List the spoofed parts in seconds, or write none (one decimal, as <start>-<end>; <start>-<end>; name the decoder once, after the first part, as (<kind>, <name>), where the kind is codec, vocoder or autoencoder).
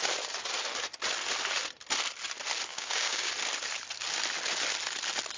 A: 2.7-3.3 (codec, DAC)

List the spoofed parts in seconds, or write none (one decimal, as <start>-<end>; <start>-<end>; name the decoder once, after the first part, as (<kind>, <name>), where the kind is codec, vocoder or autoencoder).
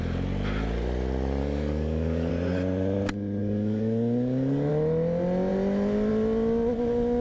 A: 1.4-2.3 (codec, DAC); 3.4-4.7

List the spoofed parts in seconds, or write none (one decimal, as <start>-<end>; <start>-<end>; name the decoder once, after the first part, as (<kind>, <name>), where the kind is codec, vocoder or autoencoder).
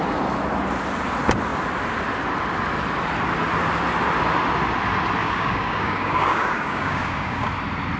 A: 5.2-7.5 (codec, DAC)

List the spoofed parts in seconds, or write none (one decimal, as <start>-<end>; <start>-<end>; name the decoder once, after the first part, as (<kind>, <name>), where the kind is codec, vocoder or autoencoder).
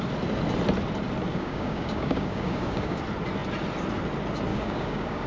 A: 1.3-3.0 (codec, DAC); 4.5-5.3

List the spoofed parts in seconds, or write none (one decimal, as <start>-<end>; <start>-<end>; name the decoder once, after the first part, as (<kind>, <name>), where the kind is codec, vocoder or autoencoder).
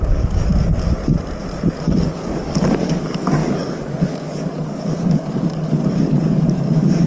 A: 0.0-0.5 (codec, DAC); 1.7-7.1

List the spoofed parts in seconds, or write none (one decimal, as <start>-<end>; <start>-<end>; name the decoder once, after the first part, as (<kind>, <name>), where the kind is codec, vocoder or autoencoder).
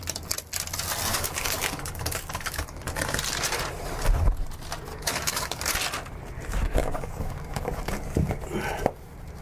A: 1.1-2.8 (codec, DAC); 4.9-5.6; 6.8-8.3